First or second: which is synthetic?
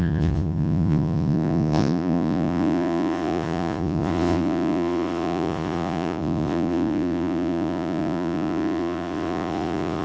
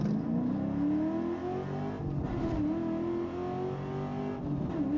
first